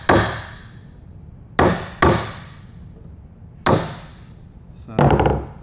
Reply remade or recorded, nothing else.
recorded